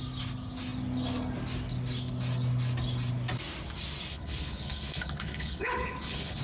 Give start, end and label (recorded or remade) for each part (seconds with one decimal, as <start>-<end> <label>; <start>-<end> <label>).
0.0-4.1 recorded; 4.1-6.4 remade

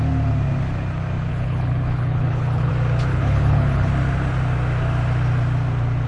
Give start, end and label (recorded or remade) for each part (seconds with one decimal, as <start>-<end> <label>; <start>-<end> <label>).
0.0-1.3 recorded; 1.3-2.7 remade; 2.7-3.1 recorded; 3.1-3.9 remade; 3.9-6.1 recorded

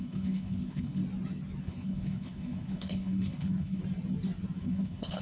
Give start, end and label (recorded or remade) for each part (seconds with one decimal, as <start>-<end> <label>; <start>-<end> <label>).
0.0-1.0 remade; 1.0-1.6 recorded; 1.6-3.8 remade; 3.8-4.6 recorded; 4.6-5.2 remade

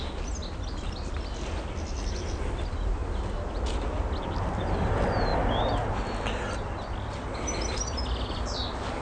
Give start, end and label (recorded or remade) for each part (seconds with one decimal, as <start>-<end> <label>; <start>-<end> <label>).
0.0-9.0 recorded

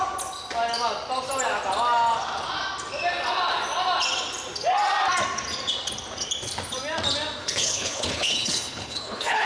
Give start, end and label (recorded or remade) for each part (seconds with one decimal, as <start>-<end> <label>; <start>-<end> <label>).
0.0-7.4 recorded; 7.4-9.5 remade